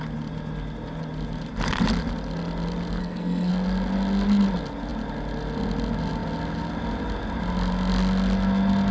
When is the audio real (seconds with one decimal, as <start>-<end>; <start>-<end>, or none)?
0.0-3.0; 3.5-8.9